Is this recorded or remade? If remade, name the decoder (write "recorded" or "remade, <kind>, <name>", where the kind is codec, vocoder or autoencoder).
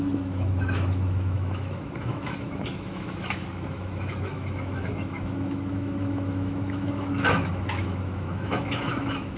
remade, autoencoder, DAC-VAE